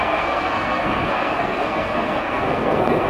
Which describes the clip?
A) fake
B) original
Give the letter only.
A